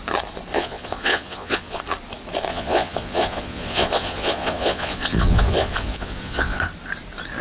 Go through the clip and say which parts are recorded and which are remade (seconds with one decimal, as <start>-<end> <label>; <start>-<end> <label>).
0.0-0.5 recorded; 0.5-1.8 remade; 1.8-2.5 recorded; 2.5-6.6 remade; 6.6-7.4 recorded